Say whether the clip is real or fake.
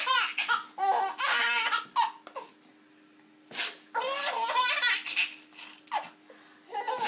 real